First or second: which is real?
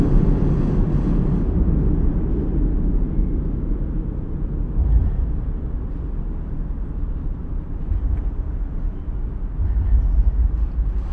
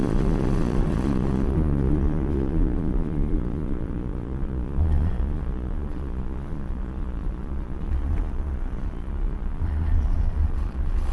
first